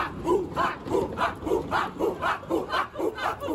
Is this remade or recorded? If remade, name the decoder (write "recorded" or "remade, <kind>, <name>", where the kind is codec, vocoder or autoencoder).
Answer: recorded